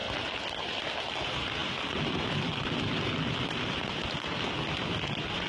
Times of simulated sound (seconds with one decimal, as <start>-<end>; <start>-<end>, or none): 0.0-0.7; 1.6-4.1